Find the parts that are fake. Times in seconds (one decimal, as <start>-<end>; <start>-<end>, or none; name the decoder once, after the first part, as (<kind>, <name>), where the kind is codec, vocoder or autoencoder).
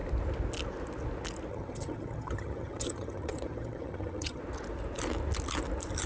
1.5-4.4 (vocoder, HiFi-GAN)